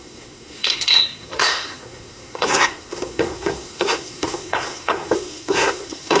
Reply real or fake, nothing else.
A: fake